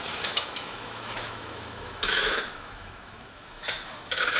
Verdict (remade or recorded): remade